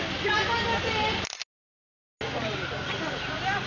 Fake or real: real